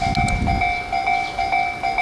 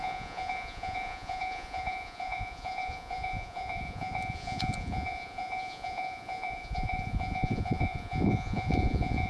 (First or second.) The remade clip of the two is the second